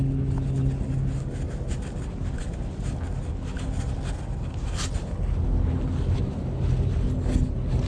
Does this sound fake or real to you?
real